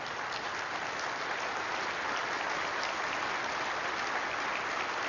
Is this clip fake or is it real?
real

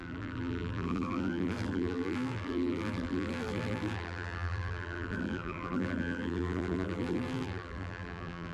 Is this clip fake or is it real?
fake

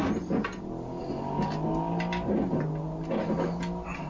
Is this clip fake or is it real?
real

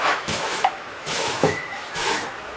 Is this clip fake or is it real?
fake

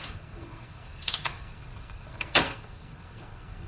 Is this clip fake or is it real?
fake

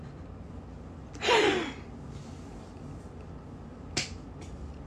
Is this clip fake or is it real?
real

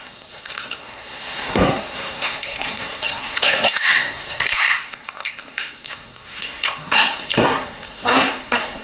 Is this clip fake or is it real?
fake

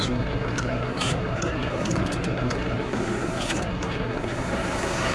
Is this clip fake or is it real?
fake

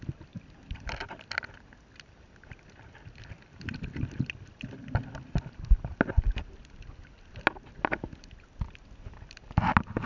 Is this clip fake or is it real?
real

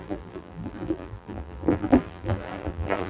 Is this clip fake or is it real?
fake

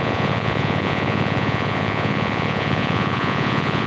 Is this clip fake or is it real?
fake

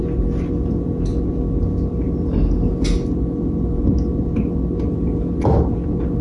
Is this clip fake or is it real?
real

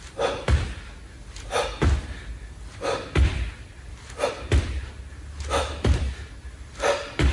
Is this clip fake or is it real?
real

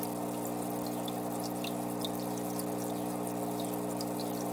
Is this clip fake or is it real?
real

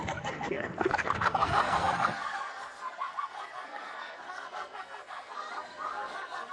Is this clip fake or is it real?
fake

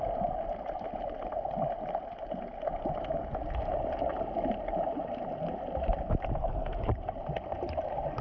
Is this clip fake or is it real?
real